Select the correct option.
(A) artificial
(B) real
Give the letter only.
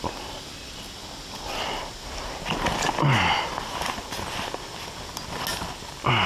B